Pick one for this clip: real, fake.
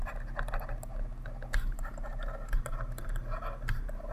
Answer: real